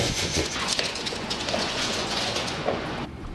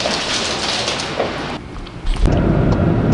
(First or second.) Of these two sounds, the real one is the second